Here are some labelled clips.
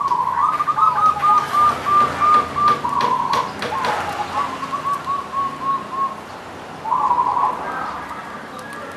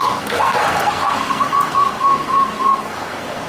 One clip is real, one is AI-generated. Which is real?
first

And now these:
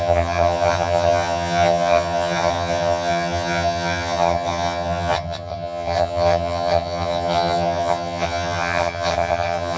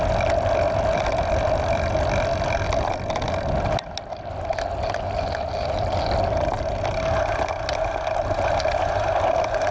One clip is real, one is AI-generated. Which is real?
second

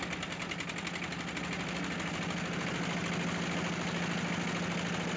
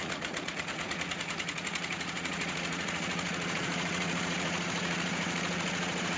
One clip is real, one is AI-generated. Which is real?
first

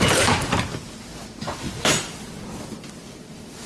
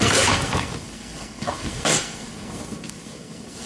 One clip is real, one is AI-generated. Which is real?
first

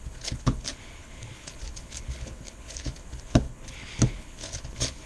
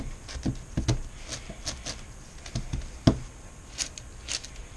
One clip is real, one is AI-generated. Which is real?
second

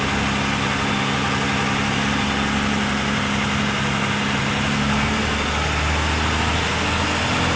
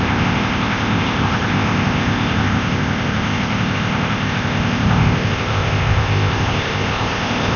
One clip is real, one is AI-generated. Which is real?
first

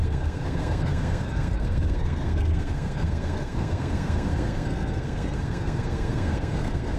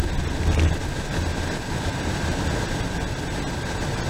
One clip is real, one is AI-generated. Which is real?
second